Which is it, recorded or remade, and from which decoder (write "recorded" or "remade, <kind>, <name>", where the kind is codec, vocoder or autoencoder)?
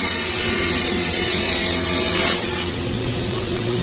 remade, vocoder, WaveNeXt